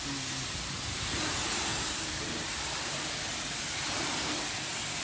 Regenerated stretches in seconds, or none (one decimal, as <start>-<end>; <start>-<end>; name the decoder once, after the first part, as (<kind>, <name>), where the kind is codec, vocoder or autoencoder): none